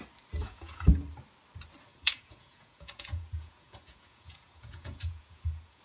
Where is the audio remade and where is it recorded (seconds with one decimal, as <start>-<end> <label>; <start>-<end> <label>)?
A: 0.0-0.4 recorded; 0.4-0.9 remade; 0.9-1.9 recorded; 1.9-5.8 remade